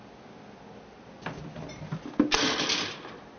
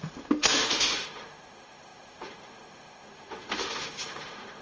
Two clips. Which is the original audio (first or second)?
first